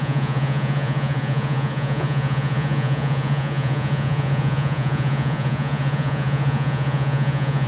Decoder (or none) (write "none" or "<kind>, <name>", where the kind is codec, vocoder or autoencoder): vocoder, Vocos